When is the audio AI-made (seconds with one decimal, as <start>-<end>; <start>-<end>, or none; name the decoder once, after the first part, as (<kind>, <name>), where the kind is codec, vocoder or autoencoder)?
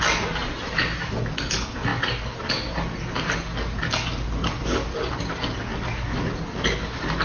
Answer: none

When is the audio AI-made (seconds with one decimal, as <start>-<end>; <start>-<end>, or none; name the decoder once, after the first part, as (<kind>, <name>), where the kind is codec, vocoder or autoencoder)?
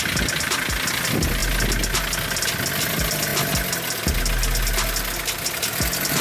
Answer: 0.0-1.4 (vocoder, BigVGAN v2); 2.7-3.3; 5.2-6.2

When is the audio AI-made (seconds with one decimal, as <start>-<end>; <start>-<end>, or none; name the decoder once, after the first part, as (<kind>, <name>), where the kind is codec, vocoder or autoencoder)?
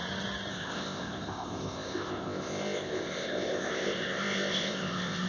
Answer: 0.5-5.3 (codec, ZipCodec)